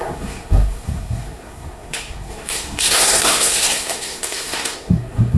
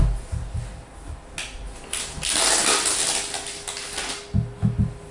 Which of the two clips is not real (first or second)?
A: first